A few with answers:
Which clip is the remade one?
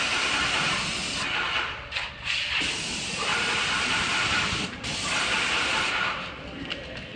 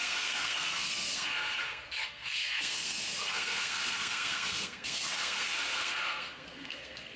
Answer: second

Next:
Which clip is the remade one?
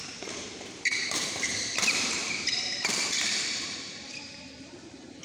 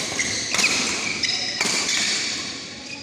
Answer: first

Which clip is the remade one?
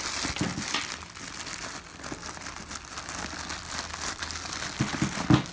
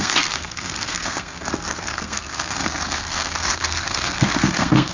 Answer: second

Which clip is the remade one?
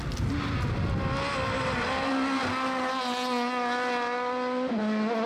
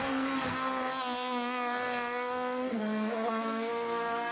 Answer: second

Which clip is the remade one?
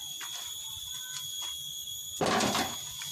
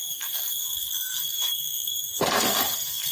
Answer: second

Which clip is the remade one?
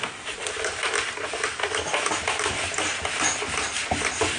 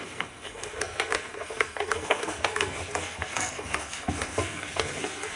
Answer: second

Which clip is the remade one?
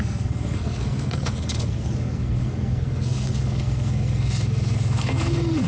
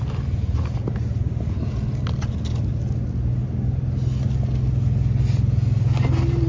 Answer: first